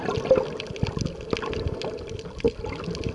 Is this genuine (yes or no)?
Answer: yes